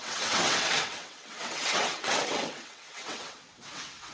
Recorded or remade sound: remade